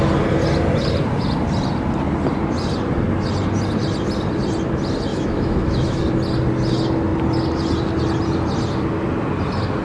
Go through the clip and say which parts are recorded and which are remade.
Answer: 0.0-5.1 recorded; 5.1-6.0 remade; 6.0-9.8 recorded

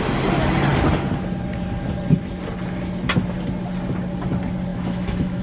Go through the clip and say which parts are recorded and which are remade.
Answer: 0.0-4.7 recorded; 4.7-5.4 remade

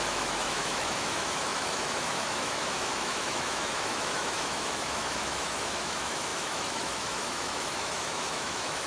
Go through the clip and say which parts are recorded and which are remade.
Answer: 0.0-8.9 remade

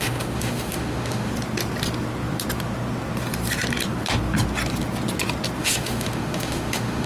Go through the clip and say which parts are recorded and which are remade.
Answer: 0.0-1.3 remade; 1.3-5.6 recorded; 5.6-7.1 remade